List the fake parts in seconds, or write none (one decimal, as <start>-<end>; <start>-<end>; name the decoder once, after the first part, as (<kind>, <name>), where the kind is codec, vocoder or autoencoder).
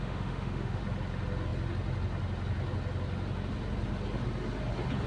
0.0-0.8 (autoencoder, DAC-VAE)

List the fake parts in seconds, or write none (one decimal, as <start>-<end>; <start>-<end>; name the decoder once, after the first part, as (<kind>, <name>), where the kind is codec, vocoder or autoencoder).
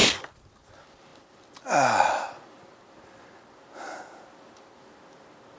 none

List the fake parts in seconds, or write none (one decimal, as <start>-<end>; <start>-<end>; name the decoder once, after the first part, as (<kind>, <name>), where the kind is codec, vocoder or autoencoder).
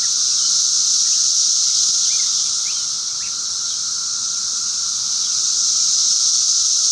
4.0-4.8 (vocoder, Vocos)